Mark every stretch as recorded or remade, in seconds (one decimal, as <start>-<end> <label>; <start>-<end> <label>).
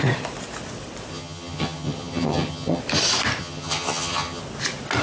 0.0-1.1 recorded; 1.1-2.8 remade; 2.8-3.4 recorded; 3.4-4.4 remade; 4.4-5.0 recorded